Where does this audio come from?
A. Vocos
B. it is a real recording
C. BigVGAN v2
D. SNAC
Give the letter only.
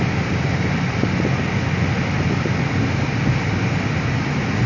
B